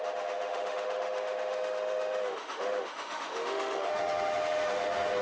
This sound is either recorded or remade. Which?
remade